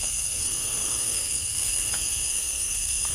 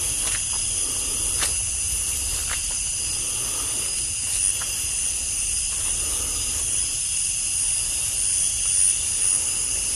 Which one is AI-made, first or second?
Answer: first